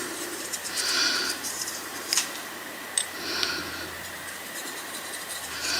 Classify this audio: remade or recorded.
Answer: remade